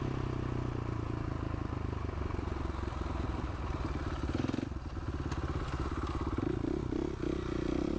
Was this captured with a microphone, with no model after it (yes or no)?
yes